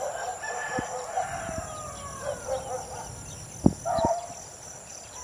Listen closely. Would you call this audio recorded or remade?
recorded